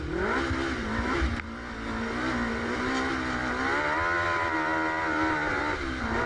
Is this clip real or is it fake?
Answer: real